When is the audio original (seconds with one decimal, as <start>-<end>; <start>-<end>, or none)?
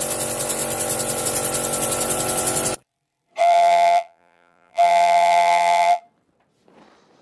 0.0-3.4; 6.0-7.2